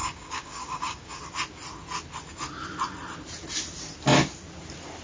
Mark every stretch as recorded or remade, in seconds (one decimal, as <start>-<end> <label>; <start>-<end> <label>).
0.0-1.2 remade; 1.2-5.0 recorded